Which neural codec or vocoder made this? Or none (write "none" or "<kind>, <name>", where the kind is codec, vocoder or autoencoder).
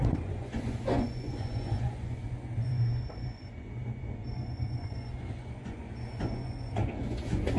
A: vocoder, Vocos